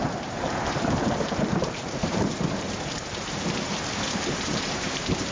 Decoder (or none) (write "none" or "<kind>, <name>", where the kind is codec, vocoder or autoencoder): vocoder, BigVGAN v2